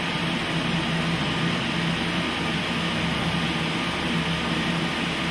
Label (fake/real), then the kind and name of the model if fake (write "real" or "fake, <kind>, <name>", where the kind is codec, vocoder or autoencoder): real